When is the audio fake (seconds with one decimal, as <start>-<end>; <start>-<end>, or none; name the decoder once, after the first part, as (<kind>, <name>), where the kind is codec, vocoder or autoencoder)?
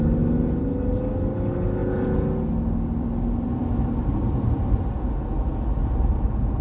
none